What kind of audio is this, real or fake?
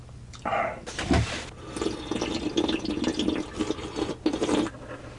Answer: real